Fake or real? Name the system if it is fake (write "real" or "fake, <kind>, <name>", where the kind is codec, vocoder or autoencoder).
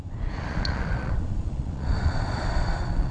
fake, vocoder, Vocos